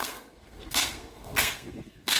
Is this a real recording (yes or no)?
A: no